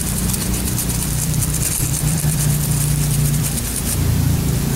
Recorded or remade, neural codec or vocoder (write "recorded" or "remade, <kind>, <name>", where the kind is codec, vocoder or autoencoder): remade, vocoder, BigVGAN v2